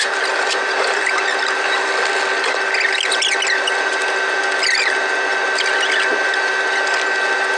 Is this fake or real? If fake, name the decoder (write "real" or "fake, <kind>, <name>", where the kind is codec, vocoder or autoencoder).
real